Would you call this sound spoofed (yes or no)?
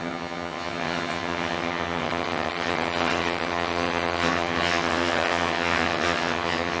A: yes